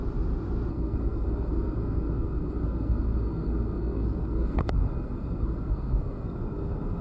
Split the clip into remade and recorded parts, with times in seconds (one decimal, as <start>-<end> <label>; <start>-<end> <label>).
0.0-0.7 recorded; 0.7-7.0 remade